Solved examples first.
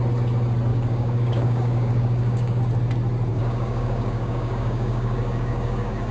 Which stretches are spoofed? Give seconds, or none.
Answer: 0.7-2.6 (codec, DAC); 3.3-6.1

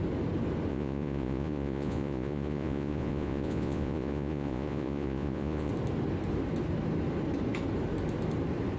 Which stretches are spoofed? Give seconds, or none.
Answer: 0.7-5.7 (vocoder, Vocos)

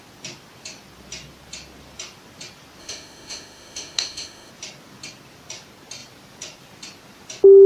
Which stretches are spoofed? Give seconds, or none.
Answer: 2.8-4.5 (autoencoder, DAC-VAE)

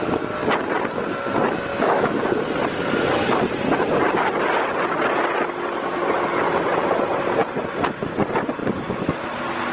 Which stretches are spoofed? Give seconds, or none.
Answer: 1.7-2.2 (autoencoder, DAC-VAE)

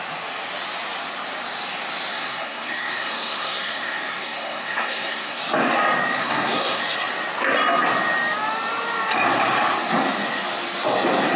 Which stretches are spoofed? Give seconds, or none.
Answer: 2.1-5.4 (codec, SNAC); 6.2-6.8